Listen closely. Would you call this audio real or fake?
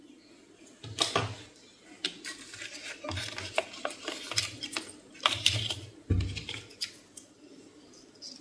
real